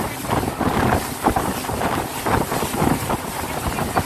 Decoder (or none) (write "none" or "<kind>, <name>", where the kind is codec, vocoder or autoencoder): none